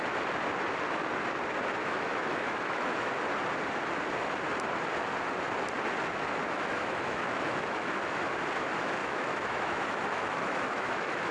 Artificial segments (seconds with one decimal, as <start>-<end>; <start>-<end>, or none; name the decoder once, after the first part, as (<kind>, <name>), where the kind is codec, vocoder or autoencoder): 1.8-3.1 (autoencoder, DAC-VAE); 6.4-8.2; 9.0-11.3